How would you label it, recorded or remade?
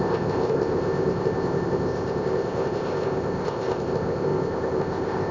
remade